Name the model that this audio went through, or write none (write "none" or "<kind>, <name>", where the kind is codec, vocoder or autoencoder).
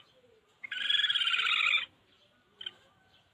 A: none